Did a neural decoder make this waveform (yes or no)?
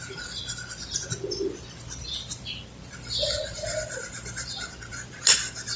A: yes